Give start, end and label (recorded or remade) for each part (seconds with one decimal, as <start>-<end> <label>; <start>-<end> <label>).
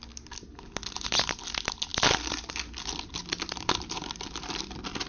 0.0-5.1 recorded